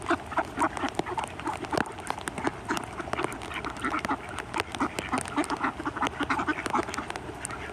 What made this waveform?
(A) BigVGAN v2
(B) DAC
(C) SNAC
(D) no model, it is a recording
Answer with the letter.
D